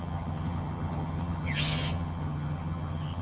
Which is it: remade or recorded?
remade